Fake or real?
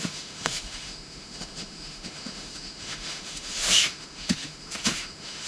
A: fake